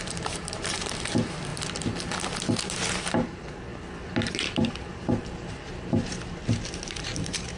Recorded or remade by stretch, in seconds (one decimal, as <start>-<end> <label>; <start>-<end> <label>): 0.0-1.5 remade; 1.5-2.4 recorded; 2.4-3.7 remade; 3.7-4.3 recorded; 4.3-7.6 remade